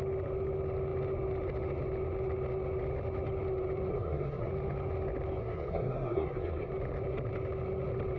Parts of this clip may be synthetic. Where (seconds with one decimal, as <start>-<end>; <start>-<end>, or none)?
3.9-4.5; 5.4-6.7